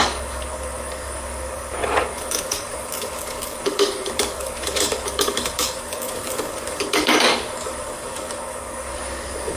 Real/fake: fake